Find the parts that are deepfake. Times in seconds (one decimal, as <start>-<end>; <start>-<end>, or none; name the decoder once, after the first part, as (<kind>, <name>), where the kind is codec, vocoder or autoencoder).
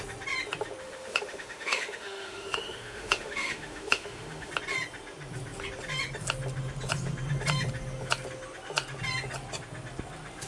0.8-4.5 (autoencoder, DAC-VAE)